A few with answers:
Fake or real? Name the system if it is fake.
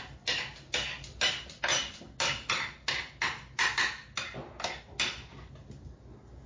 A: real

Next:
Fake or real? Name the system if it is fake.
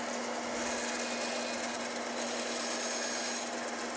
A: real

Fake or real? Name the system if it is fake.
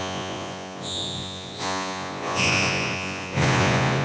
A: fake, vocoder, Vocos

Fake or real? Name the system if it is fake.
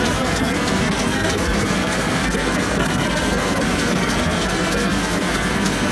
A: fake, codec, SNAC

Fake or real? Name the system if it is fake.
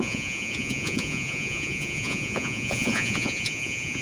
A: fake, vocoder, Vocos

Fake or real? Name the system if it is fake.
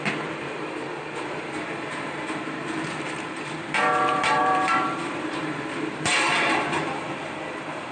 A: fake, vocoder, BigVGAN v2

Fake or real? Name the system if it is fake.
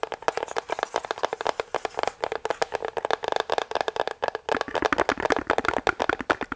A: real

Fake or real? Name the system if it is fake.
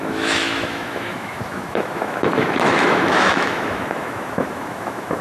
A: fake, autoencoder, DAC-VAE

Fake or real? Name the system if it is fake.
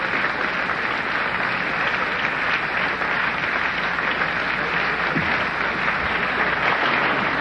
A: real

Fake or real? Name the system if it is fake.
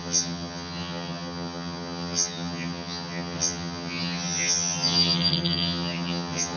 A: fake, vocoder, HiFi-GAN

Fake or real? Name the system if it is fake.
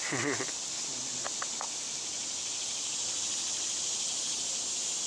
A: real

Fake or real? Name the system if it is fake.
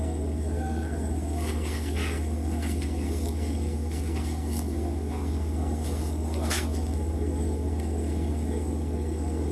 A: fake, codec, SNAC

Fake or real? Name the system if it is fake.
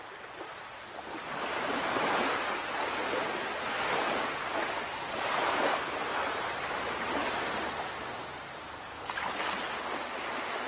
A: real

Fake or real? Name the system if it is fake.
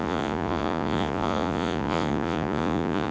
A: fake, vocoder, Vocos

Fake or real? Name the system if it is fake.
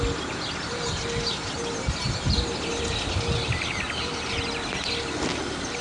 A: real